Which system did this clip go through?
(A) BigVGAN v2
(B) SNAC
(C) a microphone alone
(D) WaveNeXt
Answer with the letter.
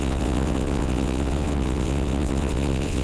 D